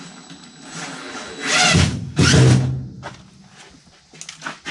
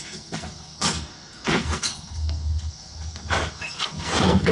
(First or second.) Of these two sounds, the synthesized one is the second